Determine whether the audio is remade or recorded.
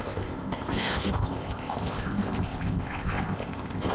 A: remade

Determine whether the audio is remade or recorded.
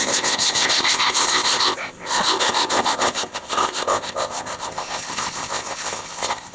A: remade